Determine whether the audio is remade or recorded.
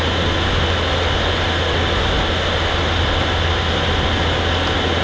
recorded